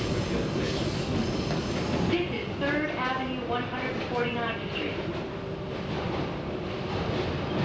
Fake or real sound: real